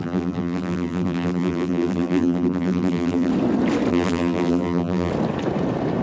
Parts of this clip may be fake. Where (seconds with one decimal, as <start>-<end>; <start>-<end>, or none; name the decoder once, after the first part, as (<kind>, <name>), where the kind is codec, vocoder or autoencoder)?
0.0-3.3 (vocoder, BigVGAN v2); 3.9-5.1